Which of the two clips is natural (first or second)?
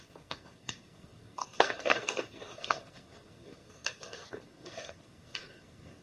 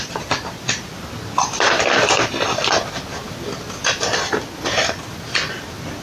second